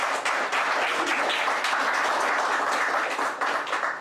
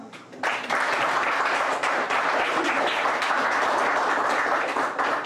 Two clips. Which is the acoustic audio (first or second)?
first